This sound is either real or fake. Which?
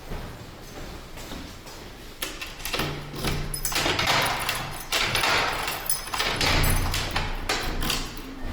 real